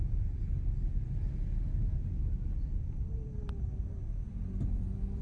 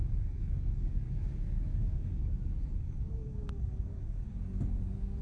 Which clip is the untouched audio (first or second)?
first